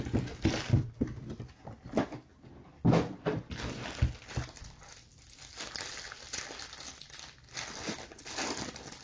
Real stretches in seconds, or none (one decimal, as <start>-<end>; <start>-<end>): 0.0-9.0